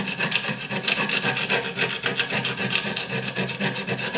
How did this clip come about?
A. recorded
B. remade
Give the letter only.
A